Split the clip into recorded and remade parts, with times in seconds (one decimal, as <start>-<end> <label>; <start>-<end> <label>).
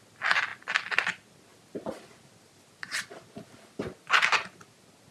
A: 0.0-5.1 recorded